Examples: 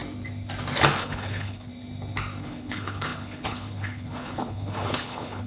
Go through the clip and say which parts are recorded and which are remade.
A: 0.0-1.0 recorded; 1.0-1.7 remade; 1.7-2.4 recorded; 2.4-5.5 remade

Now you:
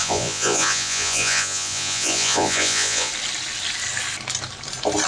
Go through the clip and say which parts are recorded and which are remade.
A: 0.0-3.1 remade; 3.1-5.1 recorded

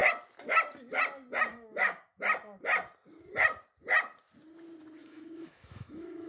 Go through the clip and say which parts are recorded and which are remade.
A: 0.0-1.5 recorded; 1.5-2.2 remade; 2.2-5.0 recorded; 5.0-6.3 remade

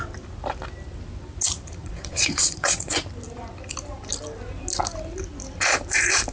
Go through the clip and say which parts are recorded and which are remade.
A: 0.0-1.8 recorded; 1.8-2.9 remade; 2.9-6.3 recorded